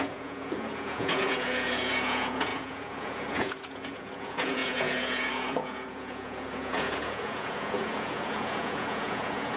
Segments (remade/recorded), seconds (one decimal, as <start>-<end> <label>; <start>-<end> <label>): 0.0-9.6 remade